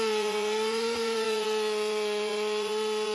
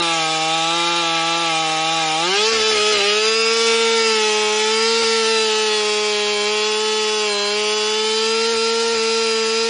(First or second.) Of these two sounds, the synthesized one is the first